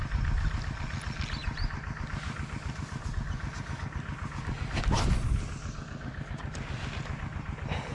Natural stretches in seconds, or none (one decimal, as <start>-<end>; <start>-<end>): 0.0-7.9